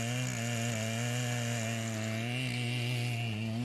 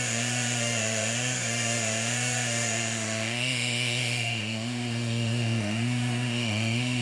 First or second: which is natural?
first